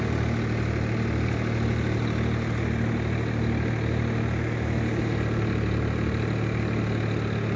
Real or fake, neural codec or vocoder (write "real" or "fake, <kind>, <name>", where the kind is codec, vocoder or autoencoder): real